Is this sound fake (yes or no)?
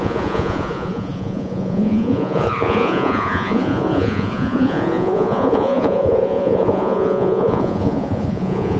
yes